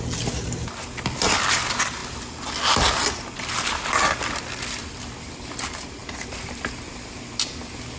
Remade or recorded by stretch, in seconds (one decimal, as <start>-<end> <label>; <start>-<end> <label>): 0.0-8.0 recorded